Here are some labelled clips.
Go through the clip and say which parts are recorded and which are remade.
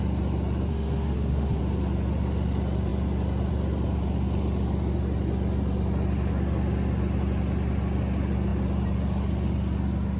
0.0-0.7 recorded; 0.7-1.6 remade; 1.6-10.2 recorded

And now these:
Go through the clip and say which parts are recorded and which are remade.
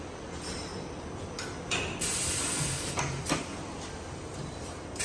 0.0-5.0 recorded